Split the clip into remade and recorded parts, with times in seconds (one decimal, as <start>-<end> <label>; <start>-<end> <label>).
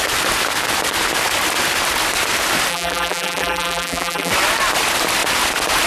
0.0-2.7 recorded; 2.7-4.3 remade; 4.3-5.9 recorded